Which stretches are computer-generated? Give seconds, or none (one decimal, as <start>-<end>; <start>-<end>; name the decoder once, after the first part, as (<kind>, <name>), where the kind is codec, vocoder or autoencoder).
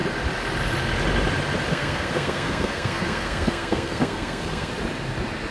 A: 1.7-4.7 (codec, SNAC)